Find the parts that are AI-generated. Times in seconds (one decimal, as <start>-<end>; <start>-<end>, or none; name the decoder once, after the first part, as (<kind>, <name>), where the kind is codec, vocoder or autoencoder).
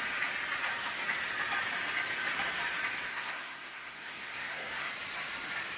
3.1-4.9 (codec, SNAC)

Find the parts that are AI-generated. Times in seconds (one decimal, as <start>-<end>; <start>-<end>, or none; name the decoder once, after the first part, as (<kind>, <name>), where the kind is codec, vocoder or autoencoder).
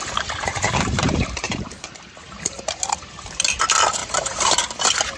0.5-3.6 (vocoder, BigVGAN v2); 4.0-4.5